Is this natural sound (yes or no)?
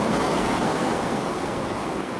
no